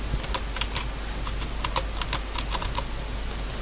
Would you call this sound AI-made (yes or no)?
no